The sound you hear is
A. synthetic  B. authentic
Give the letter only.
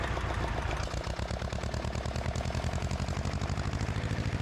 B